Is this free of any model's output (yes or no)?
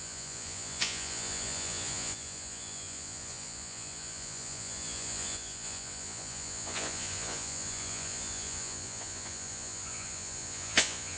no